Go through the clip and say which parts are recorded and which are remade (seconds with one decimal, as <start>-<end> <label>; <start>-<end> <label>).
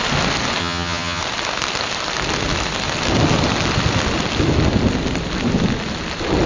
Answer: 0.0-0.6 recorded; 0.6-1.2 remade; 1.2-6.5 recorded